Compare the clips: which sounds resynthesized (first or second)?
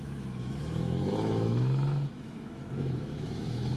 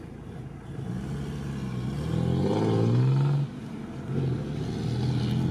first